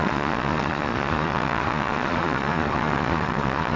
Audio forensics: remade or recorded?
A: remade